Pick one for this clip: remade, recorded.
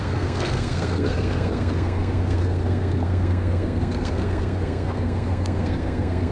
remade